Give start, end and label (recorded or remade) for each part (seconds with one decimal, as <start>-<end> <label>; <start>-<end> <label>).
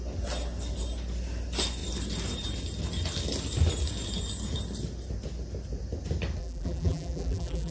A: 0.0-6.4 recorded; 6.4-7.7 remade